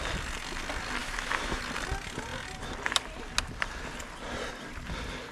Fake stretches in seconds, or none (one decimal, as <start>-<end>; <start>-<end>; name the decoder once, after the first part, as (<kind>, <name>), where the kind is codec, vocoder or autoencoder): 1.0-1.6 (autoencoder, DAC-VAE)